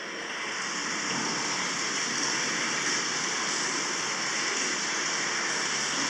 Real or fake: real